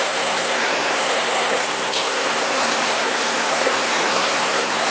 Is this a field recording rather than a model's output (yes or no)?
no